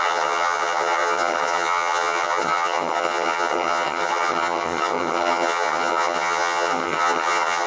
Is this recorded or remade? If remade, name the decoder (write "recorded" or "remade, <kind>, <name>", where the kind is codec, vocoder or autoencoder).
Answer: remade, vocoder, HiFi-GAN